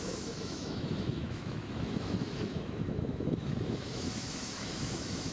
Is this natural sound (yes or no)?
no